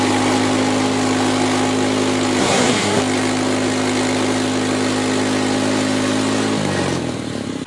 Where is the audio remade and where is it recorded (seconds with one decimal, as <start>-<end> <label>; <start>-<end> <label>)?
0.0-2.4 recorded; 2.4-3.0 remade; 3.0-7.7 recorded